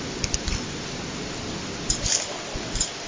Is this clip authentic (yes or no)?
yes